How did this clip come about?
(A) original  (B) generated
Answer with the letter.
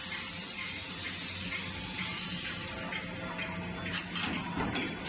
A